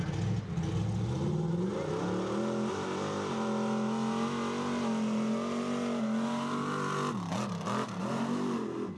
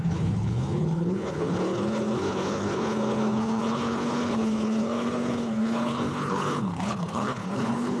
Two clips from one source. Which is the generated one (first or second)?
second